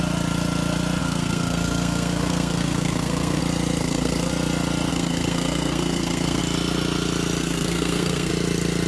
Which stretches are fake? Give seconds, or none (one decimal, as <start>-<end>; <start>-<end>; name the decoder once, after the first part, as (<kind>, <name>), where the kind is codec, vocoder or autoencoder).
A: 1.0-3.4 (codec, SNAC); 3.8-4.3; 4.9-6.4; 7.4-8.3